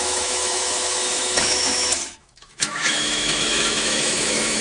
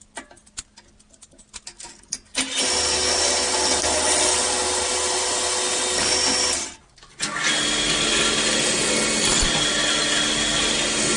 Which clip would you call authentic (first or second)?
second